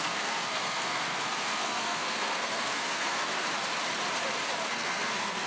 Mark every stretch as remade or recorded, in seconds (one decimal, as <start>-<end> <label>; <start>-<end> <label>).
0.0-3.3 remade; 3.3-4.7 recorded; 4.7-5.5 remade